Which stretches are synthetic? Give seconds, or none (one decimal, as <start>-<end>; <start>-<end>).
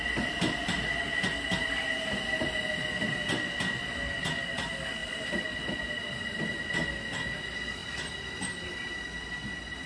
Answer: 5.0-6.1; 7.8-8.7